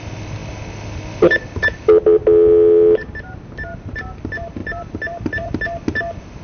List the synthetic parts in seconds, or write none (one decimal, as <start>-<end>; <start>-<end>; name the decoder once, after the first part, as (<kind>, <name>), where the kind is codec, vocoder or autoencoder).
4.6-5.5 (vocoder, BigVGAN v2)